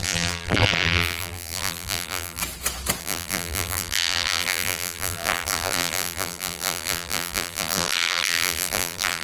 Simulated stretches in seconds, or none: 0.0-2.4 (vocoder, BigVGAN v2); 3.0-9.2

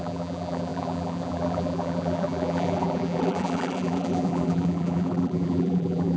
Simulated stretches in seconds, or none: 0.0-6.2 (vocoder, BigVGAN v2)

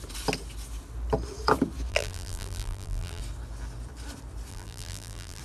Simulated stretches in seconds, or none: 1.9-3.2 (vocoder, BigVGAN v2); 4.5-5.4